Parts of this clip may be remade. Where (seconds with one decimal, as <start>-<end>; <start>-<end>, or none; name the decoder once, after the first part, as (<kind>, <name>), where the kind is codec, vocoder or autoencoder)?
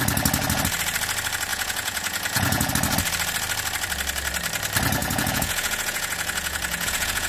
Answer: 1.5-2.7 (vocoder, Vocos); 5.0-7.3